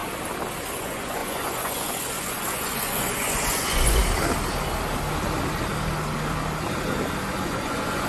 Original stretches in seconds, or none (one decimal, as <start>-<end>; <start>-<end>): 0.0-0.7; 4.0-7.3